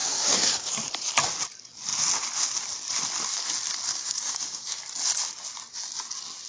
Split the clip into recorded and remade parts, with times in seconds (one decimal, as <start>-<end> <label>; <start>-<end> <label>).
0.0-0.7 remade; 0.7-3.9 recorded; 3.9-4.8 remade; 4.8-6.5 recorded